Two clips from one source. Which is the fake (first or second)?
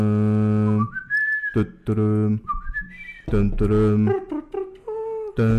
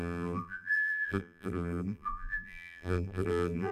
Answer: second